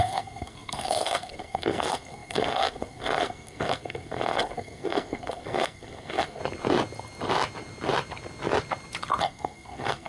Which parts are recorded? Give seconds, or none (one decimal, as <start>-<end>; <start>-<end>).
6.4-9.2